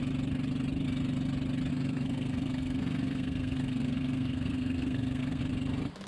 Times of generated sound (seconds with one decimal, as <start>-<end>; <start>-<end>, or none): 1.7-5.4